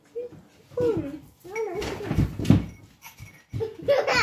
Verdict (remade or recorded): recorded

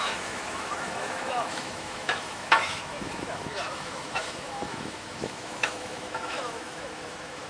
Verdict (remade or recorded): remade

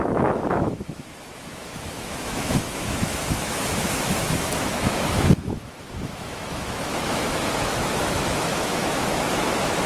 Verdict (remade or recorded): remade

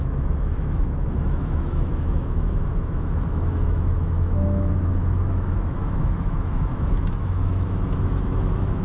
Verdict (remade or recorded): remade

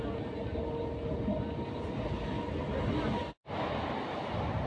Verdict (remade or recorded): recorded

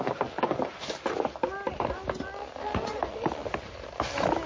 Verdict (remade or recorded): recorded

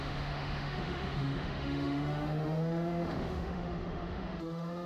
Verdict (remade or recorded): remade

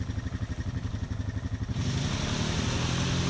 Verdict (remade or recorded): recorded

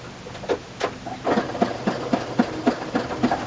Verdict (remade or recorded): recorded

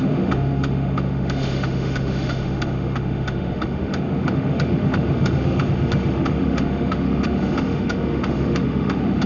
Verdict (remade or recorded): remade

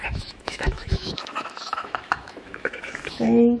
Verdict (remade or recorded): remade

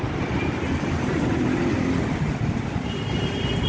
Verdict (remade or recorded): recorded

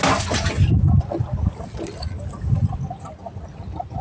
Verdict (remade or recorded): recorded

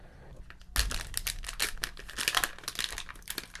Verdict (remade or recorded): recorded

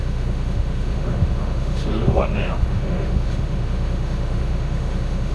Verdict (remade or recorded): remade